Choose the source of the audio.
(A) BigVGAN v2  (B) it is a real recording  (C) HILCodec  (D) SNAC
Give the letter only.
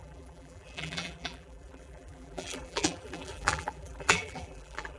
A